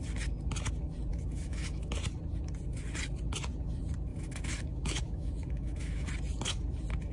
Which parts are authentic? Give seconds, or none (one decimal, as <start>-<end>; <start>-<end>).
0.0-1.1; 1.9-4.1; 6.1-7.1